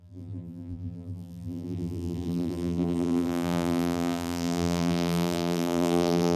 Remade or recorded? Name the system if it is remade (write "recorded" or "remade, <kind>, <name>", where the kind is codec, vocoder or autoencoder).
remade, vocoder, BigVGAN v2